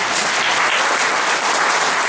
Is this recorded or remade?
recorded